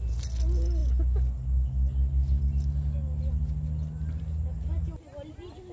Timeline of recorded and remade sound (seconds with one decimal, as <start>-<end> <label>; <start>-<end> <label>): 0.0-5.7 recorded